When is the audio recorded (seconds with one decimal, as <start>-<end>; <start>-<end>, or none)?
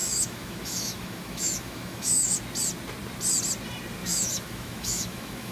2.4-4.0